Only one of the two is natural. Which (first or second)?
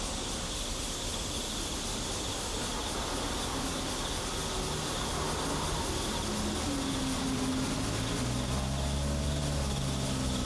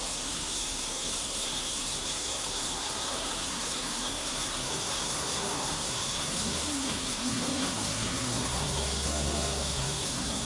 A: first